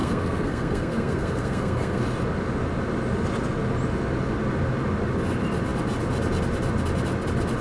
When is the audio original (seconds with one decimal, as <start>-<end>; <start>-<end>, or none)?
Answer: 2.0-7.6